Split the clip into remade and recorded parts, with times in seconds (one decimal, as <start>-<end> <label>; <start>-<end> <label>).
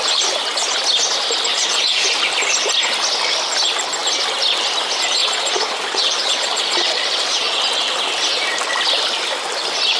0.0-1.5 recorded; 1.5-2.1 remade; 2.1-5.2 recorded; 5.2-7.6 remade; 7.6-10.0 recorded